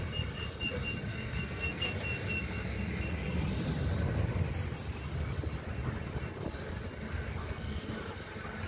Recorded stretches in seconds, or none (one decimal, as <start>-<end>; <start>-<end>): 0.0-1.1; 1.9-7.4; 7.9-8.7